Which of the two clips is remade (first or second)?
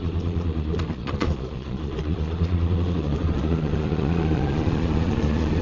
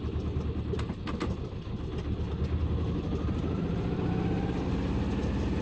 first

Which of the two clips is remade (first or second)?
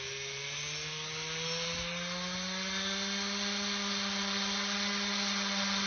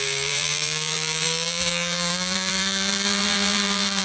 second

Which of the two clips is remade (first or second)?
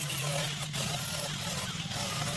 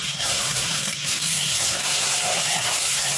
second